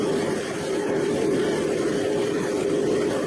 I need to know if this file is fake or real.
real